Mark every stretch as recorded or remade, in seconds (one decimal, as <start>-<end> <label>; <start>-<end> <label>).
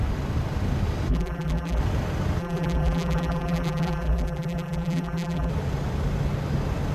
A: 0.0-1.1 recorded; 1.1-1.8 remade; 1.8-2.4 recorded; 2.4-5.5 remade; 5.5-6.9 recorded